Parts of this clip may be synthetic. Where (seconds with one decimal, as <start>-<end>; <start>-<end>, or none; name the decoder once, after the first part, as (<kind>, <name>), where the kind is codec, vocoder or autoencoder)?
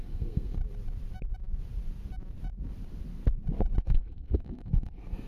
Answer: 0.0-0.6 (codec, SNAC); 3.8-5.3